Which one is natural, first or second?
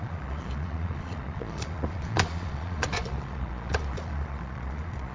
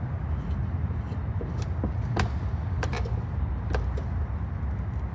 second